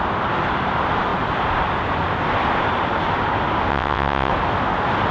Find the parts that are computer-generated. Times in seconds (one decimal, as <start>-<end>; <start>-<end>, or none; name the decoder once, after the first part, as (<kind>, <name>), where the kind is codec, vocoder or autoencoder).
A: 3.7-4.3 (vocoder, WaveNeXt)